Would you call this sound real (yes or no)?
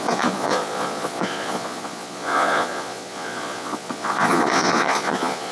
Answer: no